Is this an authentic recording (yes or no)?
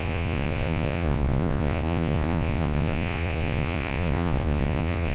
no